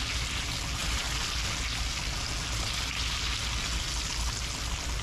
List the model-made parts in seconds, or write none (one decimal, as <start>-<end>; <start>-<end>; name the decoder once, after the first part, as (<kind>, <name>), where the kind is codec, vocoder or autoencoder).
none